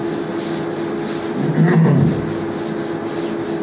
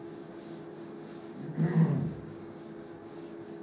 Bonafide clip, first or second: first